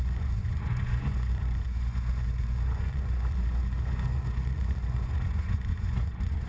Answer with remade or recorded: remade